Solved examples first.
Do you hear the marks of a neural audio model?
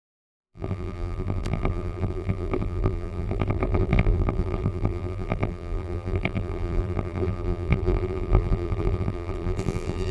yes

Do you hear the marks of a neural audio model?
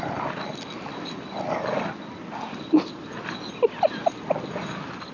no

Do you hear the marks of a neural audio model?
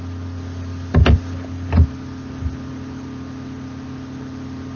no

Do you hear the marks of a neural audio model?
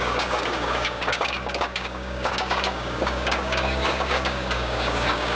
yes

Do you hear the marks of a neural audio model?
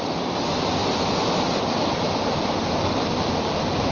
no